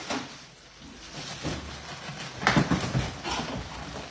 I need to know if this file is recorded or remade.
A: recorded